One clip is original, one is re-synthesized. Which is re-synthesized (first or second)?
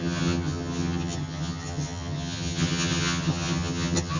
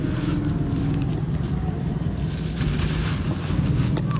first